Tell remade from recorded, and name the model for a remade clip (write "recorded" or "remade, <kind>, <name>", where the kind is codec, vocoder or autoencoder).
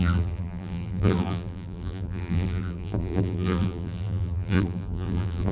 remade, vocoder, BigVGAN v2